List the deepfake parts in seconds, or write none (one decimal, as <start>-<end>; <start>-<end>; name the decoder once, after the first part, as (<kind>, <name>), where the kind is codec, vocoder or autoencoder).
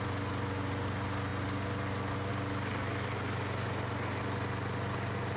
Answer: none